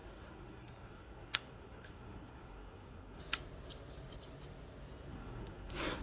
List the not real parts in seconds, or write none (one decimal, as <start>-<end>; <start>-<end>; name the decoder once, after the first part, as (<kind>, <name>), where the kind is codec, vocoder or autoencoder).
0.0-3.2 (codec, SNAC); 5.1-6.0